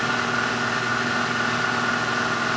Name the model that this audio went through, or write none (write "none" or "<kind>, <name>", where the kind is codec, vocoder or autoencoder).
none